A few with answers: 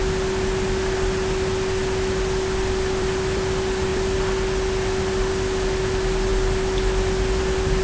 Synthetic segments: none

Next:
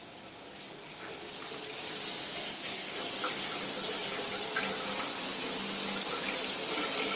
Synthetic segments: 2.5-3.0 (codec, HILCodec)

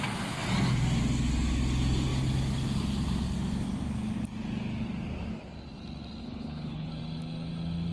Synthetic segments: 6.2-6.9 (codec, HILCodec)

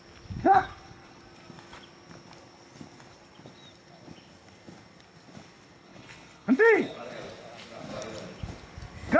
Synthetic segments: 0.4-1.2 (codec, HILCodec); 5.9-7.1